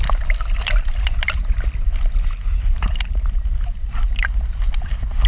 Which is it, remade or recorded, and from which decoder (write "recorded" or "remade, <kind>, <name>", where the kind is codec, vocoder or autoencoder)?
recorded